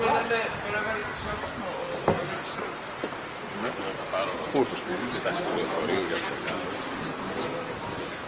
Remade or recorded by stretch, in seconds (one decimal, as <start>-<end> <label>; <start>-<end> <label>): 0.0-4.9 recorded; 4.9-5.4 remade; 5.4-8.3 recorded